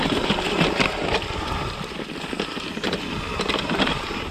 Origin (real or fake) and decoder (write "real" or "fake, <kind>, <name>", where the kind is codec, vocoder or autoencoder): real